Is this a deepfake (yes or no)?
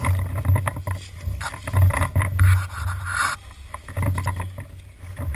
no